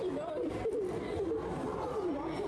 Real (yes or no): yes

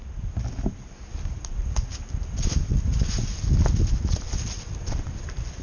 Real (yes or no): yes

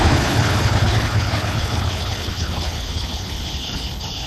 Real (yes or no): no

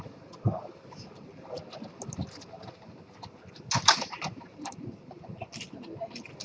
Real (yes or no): yes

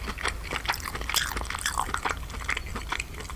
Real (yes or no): yes